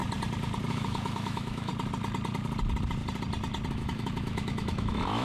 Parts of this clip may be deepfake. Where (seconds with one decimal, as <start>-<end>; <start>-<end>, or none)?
0.7-1.7; 3.7-5.2